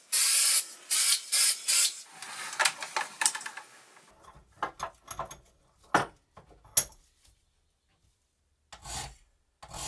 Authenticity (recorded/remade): recorded